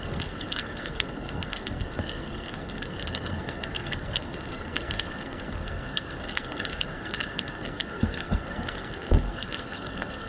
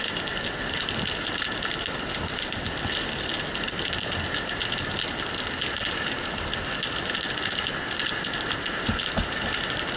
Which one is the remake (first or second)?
first